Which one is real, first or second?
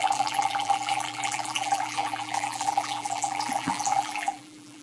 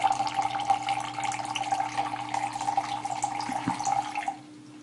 second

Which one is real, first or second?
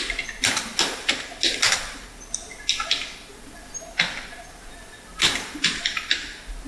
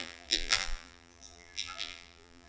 first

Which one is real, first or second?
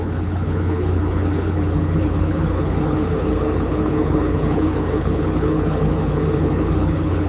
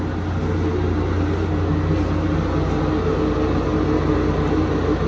second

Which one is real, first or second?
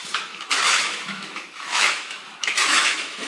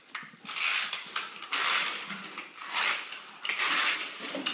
second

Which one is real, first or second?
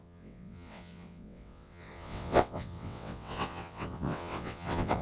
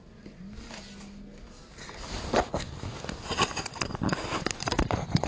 second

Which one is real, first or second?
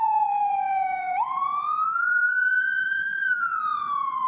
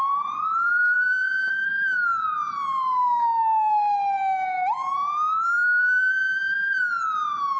second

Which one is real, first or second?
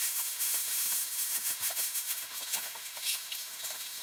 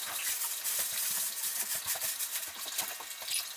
second